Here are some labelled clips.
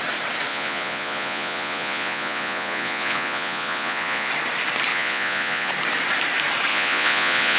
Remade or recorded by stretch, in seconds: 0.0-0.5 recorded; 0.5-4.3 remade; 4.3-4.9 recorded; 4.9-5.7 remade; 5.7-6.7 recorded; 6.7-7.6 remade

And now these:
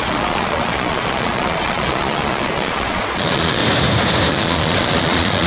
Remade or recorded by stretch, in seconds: 0.0-3.6 remade; 3.6-4.3 recorded; 4.3-5.5 remade

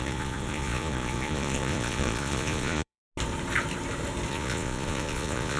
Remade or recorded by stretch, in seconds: 0.0-3.0 remade; 3.0-4.3 recorded; 4.3-5.6 remade

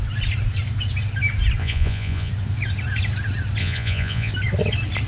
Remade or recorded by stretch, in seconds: 0.0-1.6 recorded; 1.6-2.3 remade; 2.3-3.6 recorded; 3.6-4.3 remade; 4.3-5.1 recorded

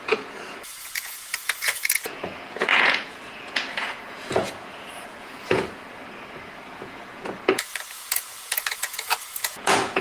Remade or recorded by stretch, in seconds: 0.0-5.8 remade; 5.8-6.7 recorded; 6.7-10.0 remade